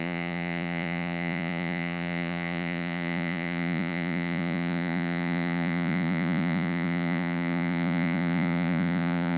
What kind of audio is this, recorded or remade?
remade